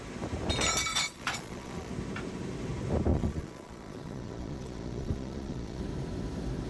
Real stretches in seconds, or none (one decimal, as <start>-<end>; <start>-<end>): 0.0-0.9; 1.9-3.1; 5.8-6.7